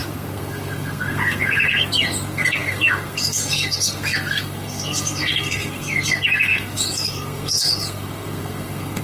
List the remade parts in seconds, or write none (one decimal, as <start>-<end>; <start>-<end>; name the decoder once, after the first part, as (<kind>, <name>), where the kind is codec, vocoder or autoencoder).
0.0-9.0 (codec, SNAC)